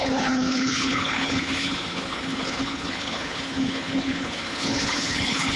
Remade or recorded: remade